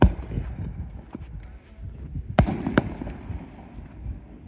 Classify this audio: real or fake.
real